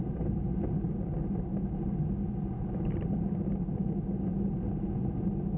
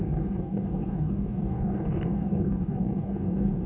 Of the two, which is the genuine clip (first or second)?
first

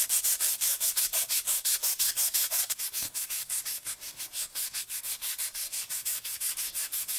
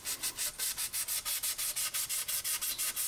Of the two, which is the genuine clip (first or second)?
second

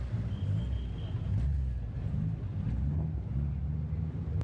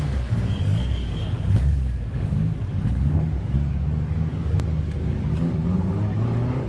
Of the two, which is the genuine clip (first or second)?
first